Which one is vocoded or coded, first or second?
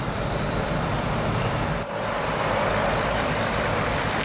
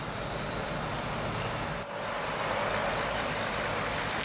first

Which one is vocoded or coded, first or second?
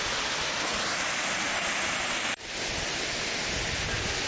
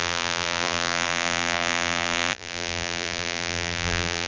second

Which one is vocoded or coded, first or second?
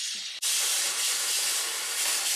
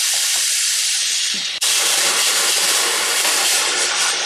second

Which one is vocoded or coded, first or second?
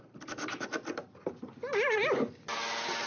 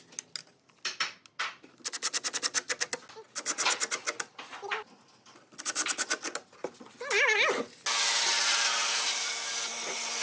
first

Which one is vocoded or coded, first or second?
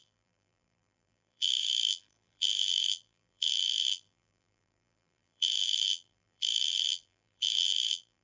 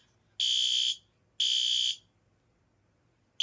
first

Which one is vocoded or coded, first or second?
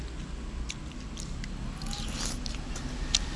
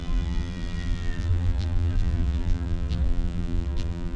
second